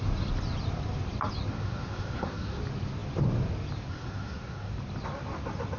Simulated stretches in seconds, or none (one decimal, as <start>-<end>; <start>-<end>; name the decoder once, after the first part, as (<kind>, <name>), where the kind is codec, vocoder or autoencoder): 1.5-2.6 (codec, SNAC); 3.9-4.7